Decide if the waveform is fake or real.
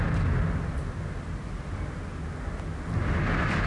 real